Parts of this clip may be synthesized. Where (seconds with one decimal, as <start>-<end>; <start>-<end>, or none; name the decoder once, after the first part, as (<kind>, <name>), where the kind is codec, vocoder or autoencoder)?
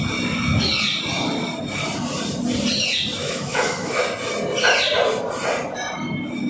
3.2-4.0 (autoencoder, DAC-VAE)